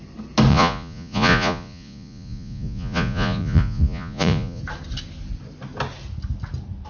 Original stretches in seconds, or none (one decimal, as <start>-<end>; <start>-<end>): 0.0-0.5; 4.6-6.9